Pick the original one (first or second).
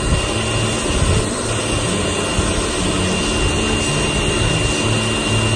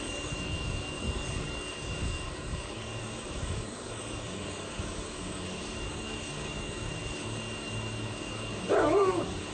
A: first